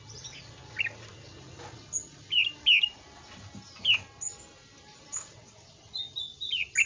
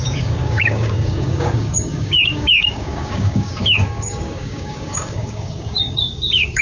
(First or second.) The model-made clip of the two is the second